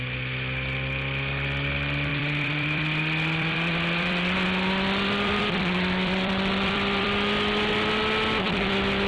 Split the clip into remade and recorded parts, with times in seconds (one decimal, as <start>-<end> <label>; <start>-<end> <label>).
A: 0.0-2.1 recorded; 2.1-7.3 remade; 7.3-9.1 recorded

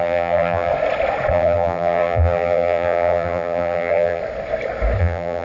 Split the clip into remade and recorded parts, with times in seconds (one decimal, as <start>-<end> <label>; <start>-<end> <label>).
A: 0.0-0.7 remade; 0.7-1.3 recorded; 1.3-4.2 remade; 4.2-5.0 recorded; 5.0-5.4 remade

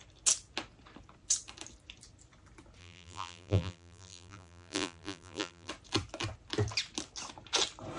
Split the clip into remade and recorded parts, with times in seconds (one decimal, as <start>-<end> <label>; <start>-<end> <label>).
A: 0.0-2.8 recorded; 2.8-5.7 remade; 5.7-8.0 recorded

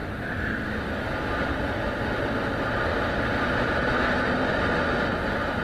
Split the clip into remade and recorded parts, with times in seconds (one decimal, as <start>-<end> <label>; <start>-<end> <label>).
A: 0.0-5.6 recorded

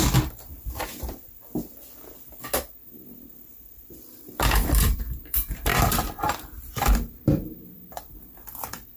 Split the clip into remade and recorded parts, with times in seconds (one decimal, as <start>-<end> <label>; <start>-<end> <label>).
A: 0.0-0.5 remade; 0.5-2.9 recorded; 2.9-9.0 remade